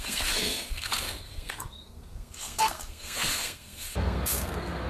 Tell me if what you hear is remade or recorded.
remade